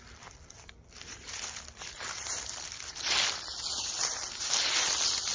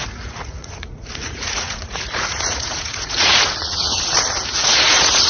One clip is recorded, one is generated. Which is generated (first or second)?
second